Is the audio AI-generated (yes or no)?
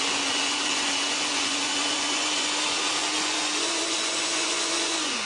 yes